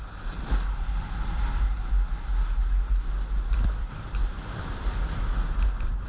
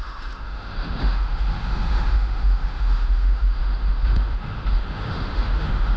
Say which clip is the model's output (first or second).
second